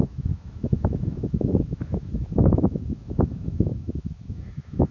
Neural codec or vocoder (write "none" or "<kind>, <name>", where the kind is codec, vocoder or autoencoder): autoencoder, DAC-VAE